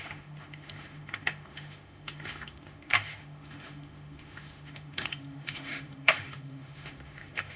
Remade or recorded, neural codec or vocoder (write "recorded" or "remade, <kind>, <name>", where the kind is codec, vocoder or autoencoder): remade, autoencoder, DAC-VAE